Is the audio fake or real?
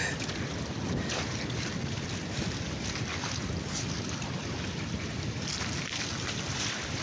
real